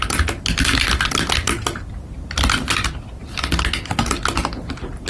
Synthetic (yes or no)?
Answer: no